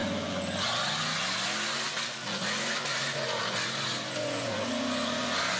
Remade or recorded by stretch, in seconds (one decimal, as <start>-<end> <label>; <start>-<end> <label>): 0.0-5.6 remade